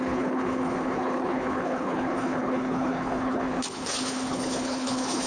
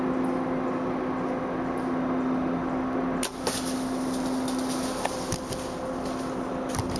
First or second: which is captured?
second